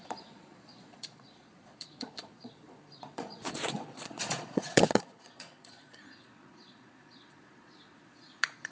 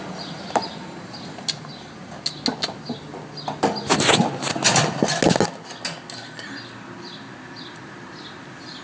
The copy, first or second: first